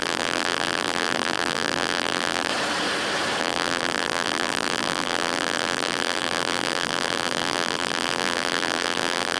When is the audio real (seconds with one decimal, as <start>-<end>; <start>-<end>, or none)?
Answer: 2.5-3.4